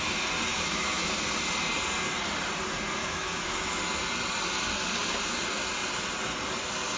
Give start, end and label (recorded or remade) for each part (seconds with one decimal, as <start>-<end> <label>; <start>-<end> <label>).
0.0-0.5 recorded; 0.5-1.1 remade; 1.1-3.0 recorded; 3.0-3.8 remade; 3.8-7.0 recorded